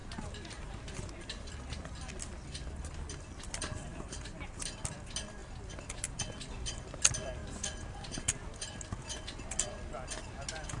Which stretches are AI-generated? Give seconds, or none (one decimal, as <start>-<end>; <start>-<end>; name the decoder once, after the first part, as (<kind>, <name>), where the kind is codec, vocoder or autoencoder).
0.0-0.8 (vocoder, BigVGAN v2)